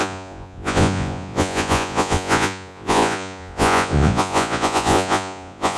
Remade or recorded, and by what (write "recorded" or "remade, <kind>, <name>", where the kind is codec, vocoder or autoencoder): remade, vocoder, Vocos